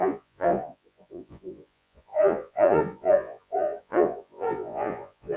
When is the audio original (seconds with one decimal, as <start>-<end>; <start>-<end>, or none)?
none